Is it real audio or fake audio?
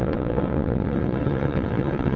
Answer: fake